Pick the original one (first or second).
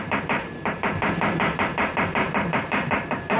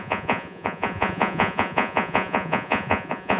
first